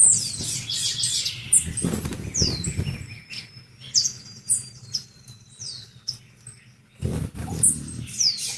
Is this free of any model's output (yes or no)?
yes